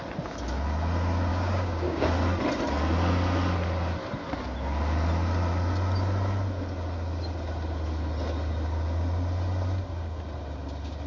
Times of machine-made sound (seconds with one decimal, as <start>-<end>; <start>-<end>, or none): 1.3-2.1